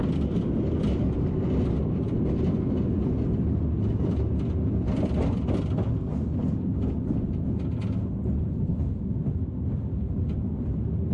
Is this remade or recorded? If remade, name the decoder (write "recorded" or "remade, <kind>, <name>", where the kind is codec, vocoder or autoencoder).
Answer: recorded